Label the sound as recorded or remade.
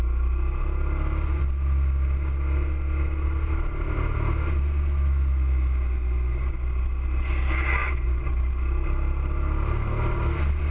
recorded